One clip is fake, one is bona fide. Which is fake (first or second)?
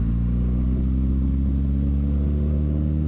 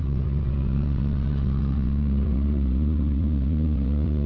second